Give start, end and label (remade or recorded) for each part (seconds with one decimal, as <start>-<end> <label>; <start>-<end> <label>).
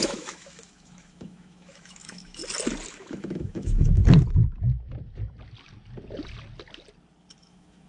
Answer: 0.0-2.4 remade; 2.4-2.9 recorded; 2.9-4.0 remade; 4.0-7.4 recorded; 7.4-7.9 remade